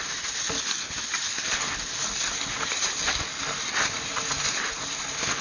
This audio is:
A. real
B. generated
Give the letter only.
A